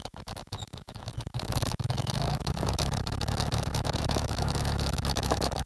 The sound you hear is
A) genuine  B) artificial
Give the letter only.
B